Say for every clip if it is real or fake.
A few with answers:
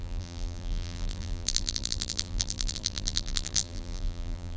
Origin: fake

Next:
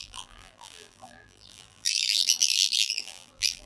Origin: fake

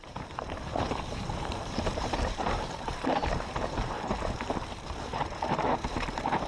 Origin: fake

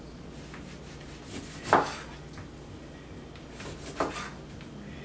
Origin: real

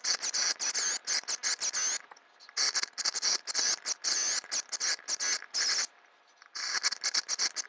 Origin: real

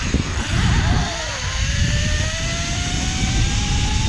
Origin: fake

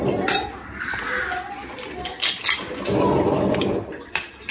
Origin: real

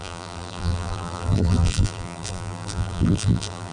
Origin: fake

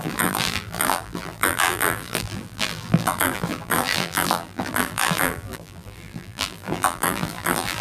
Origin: fake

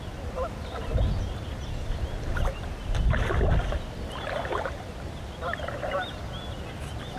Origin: real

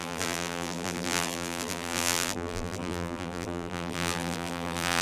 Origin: fake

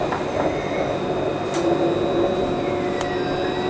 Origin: real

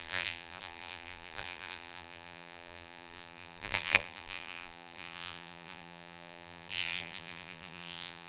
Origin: fake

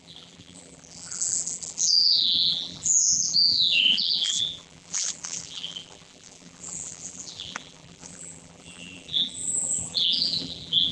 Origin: fake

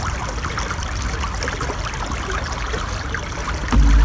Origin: real